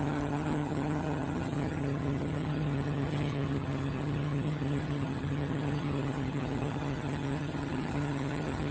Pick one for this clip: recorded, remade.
remade